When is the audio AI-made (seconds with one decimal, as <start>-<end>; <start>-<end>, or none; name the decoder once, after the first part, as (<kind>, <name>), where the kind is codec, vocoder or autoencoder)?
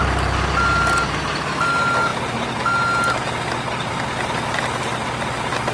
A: none